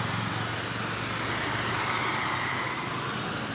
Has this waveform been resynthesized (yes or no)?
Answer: no